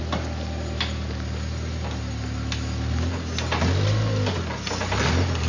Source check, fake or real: real